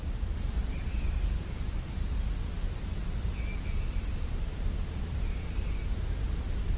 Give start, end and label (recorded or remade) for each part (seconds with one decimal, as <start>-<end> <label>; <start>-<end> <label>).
0.0-3.0 remade; 3.0-3.8 recorded; 3.8-6.8 remade